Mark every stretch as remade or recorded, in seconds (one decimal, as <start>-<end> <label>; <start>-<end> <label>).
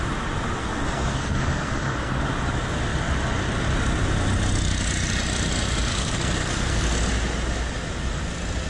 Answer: 0.0-0.6 recorded; 0.6-2.2 remade; 2.2-5.9 recorded; 5.9-6.8 remade; 6.8-8.7 recorded